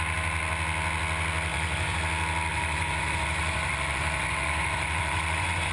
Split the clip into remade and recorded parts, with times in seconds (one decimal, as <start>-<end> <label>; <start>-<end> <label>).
0.0-1.5 recorded; 1.5-2.0 remade; 2.0-2.5 recorded; 2.5-5.7 remade